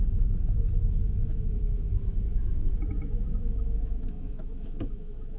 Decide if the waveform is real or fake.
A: fake